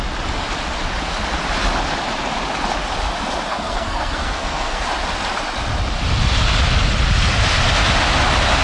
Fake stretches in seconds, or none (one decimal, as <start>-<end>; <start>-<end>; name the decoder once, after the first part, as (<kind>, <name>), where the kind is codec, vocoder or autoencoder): 3.5-4.8 (codec, SNAC)